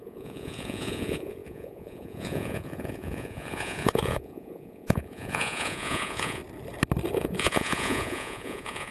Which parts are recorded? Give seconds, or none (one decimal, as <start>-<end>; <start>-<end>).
6.4-7.1